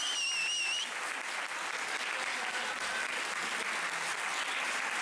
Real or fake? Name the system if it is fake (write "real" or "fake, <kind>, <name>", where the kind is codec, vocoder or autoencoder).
real